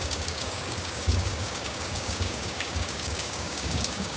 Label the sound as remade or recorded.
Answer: remade